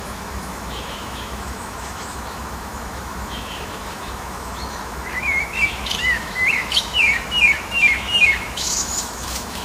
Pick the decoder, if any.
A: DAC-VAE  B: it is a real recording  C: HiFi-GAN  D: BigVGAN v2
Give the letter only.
A